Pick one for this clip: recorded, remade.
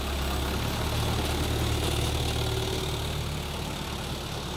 recorded